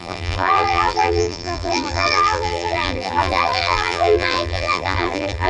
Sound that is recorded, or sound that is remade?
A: remade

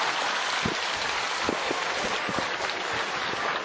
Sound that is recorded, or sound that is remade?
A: recorded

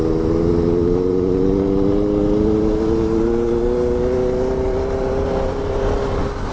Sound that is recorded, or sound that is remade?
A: recorded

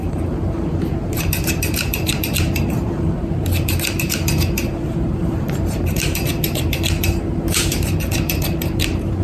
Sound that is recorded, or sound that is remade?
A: remade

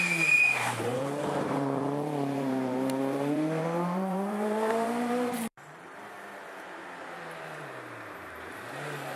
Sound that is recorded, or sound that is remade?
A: remade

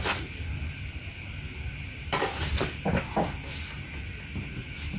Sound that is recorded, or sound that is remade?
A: recorded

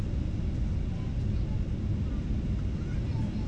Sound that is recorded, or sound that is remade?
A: recorded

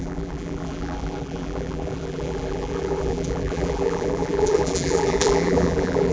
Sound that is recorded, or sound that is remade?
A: remade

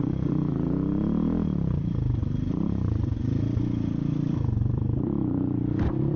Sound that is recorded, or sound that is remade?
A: remade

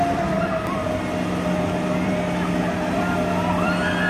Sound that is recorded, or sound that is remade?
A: remade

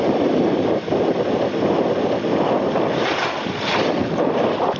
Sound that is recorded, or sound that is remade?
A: recorded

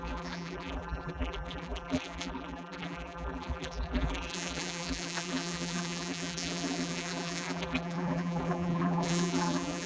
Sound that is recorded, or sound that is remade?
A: remade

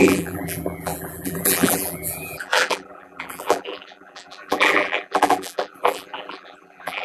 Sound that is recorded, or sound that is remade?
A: remade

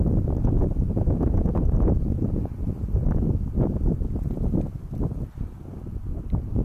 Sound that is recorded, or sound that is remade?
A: recorded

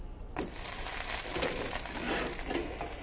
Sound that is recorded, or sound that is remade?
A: recorded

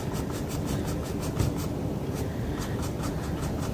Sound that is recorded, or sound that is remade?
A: recorded